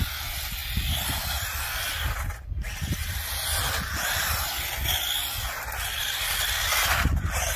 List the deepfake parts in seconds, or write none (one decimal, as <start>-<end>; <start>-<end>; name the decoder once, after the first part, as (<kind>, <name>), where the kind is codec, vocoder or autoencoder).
none